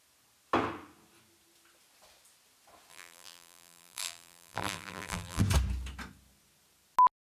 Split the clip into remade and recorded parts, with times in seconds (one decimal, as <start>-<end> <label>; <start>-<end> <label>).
0.0-2.9 recorded; 2.9-5.4 remade; 5.4-7.2 recorded